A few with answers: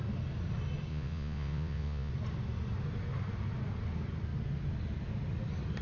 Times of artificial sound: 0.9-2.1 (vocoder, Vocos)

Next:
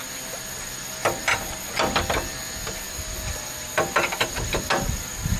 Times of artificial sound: none

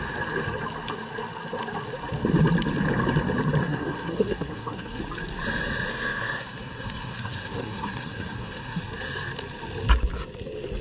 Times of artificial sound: 3.6-5.0 (codec, SNAC); 5.9-8.8

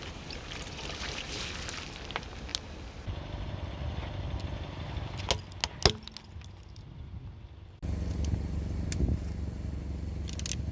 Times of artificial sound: none